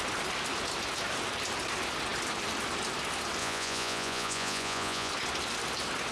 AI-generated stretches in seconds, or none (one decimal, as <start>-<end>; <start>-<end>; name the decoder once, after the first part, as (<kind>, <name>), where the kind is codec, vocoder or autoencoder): 3.4-5.1 (vocoder, Vocos)